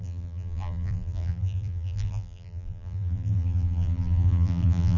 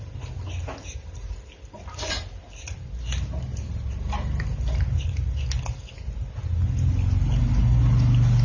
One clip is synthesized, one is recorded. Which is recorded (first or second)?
second